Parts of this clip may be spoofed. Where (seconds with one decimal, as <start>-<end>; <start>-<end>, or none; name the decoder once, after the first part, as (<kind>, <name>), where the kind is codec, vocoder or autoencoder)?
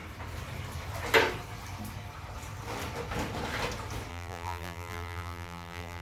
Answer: 4.1-6.0 (vocoder, BigVGAN v2)